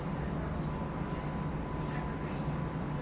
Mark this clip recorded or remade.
recorded